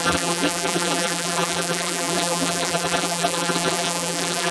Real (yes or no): no